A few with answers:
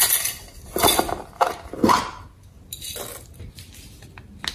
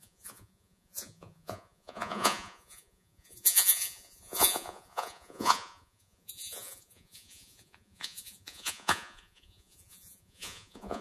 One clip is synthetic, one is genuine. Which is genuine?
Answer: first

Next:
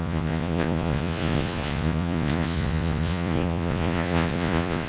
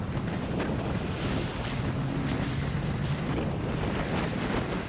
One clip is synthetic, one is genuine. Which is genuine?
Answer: second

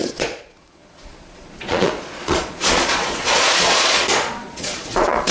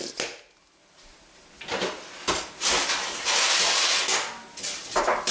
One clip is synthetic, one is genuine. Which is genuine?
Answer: second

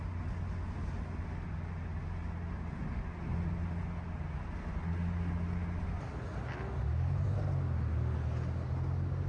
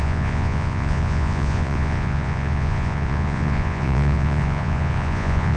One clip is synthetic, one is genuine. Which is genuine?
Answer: first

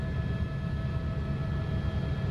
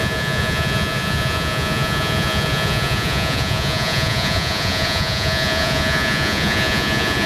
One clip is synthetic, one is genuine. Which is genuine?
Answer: first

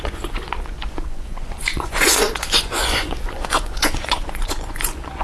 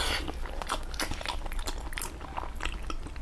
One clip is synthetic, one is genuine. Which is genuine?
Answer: second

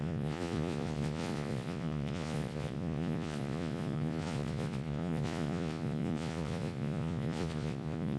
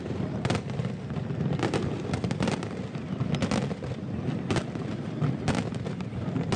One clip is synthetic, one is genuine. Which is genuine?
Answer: second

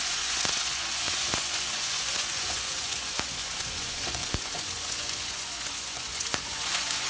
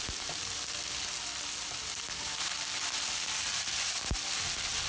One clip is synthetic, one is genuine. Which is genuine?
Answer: second